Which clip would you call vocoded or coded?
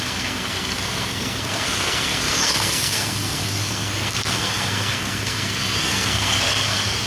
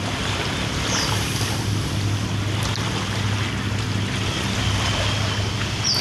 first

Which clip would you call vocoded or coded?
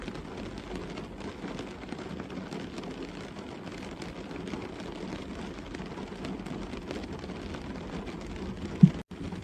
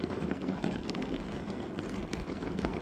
second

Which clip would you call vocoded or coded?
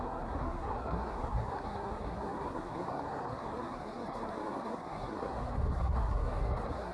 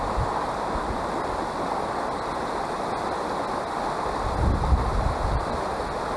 first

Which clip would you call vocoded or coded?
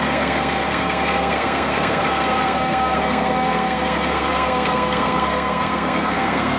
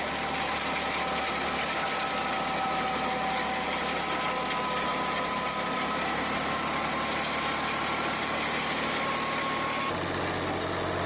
first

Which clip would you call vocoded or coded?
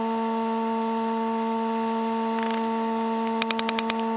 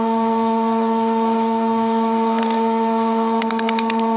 second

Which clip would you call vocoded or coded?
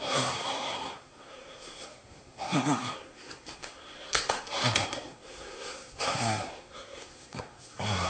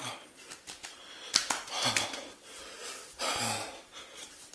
first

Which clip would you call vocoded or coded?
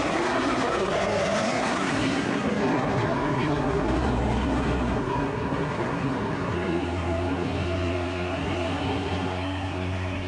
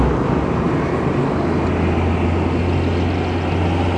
first